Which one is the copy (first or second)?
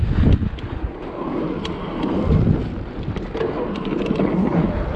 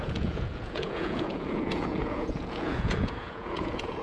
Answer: second